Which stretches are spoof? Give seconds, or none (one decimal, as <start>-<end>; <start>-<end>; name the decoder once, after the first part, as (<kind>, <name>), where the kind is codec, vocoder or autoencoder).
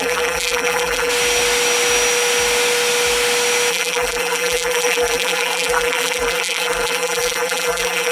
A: 0.0-1.1 (vocoder, BigVGAN v2); 3.7-8.1